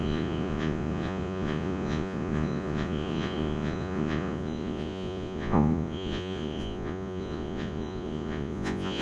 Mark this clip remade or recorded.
remade